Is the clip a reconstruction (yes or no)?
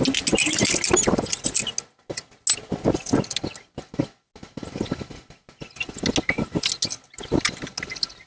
no